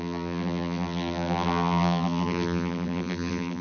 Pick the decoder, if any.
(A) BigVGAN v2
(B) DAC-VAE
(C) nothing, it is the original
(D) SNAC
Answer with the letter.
A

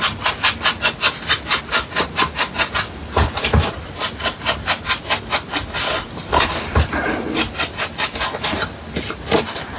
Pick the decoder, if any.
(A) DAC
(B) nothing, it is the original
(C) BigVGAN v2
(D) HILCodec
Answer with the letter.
B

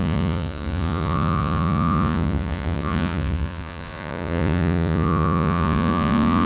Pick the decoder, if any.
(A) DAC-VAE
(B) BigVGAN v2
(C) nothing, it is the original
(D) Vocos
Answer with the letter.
D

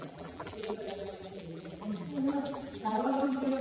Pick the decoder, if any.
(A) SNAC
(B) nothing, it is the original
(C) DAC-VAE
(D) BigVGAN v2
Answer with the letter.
D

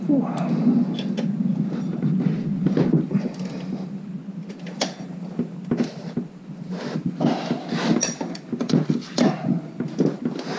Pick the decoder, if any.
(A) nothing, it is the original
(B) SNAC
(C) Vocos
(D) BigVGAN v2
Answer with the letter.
A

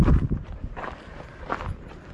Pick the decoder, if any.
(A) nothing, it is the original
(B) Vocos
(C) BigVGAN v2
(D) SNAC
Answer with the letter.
C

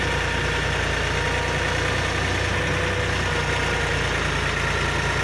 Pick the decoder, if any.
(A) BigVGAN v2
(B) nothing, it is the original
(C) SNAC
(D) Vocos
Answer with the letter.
B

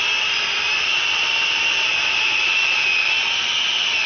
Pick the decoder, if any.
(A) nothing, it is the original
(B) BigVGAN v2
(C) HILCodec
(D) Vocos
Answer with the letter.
A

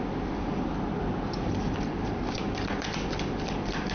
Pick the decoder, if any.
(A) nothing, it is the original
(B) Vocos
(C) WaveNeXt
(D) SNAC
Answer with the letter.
A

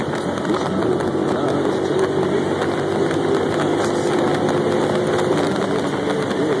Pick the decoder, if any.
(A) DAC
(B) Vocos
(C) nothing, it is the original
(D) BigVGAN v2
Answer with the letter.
C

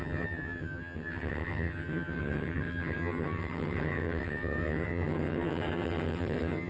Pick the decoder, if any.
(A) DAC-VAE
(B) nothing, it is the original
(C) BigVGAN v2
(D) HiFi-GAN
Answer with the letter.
D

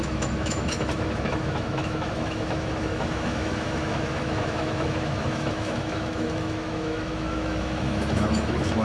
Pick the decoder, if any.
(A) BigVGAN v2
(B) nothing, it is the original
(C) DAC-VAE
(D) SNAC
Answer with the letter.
C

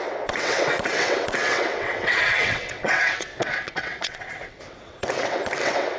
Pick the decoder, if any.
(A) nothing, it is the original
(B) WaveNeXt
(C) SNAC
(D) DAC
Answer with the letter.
B